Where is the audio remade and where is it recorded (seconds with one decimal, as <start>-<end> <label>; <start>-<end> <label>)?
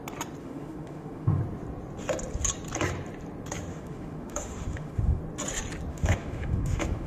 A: 0.0-0.4 recorded; 0.4-1.4 remade; 1.4-3.7 recorded; 3.7-5.2 remade; 5.2-5.9 recorded; 5.9-7.1 remade